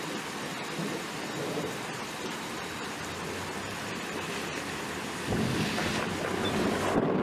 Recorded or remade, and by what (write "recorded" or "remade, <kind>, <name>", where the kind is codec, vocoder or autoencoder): recorded